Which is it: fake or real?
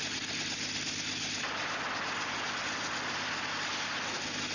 real